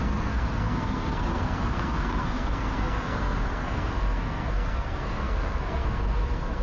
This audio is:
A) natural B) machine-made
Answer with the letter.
B